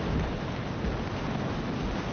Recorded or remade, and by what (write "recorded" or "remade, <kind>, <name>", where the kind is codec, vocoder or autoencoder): recorded